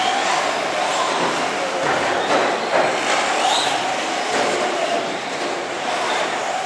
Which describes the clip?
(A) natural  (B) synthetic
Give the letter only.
A